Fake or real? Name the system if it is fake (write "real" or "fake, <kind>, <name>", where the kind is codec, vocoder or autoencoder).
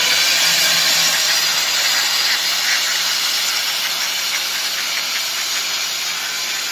real